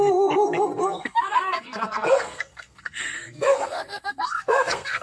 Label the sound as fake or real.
fake